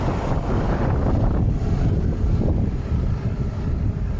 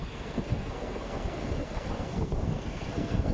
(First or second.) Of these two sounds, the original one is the first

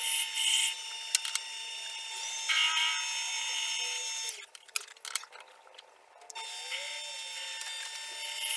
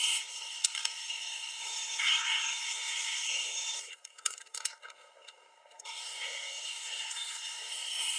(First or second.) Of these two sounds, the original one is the first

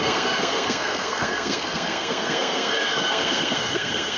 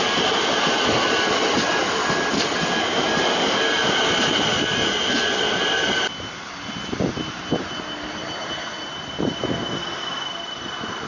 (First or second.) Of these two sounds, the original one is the second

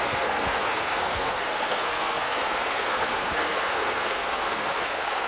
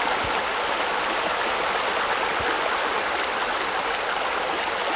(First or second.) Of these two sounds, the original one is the second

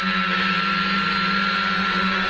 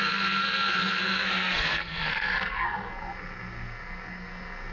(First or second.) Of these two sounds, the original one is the first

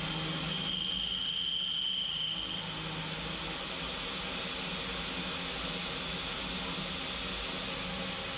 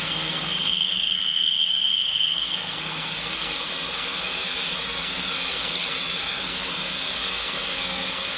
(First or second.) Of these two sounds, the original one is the first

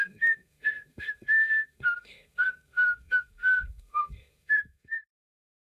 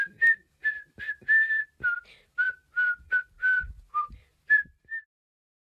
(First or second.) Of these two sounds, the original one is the second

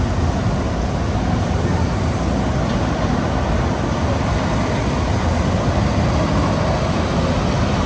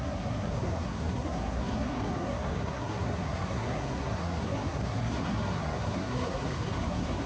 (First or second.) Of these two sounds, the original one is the first